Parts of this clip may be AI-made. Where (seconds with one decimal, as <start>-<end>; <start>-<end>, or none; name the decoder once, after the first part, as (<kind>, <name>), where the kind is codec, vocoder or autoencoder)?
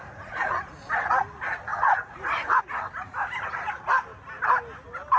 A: 0.0-0.6 (vocoder, Vocos); 1.7-2.6